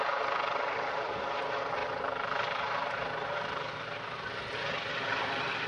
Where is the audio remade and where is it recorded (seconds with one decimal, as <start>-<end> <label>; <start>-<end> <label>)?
0.0-5.7 recorded